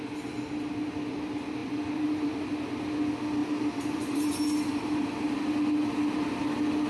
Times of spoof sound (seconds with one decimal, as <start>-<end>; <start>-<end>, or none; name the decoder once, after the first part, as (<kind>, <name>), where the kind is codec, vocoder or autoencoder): 1.6-2.3 (vocoder, BigVGAN v2); 3.4-4.2